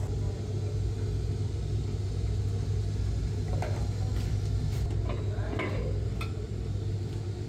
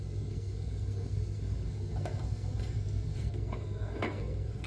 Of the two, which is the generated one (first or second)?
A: second